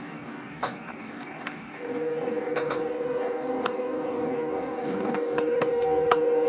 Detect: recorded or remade remade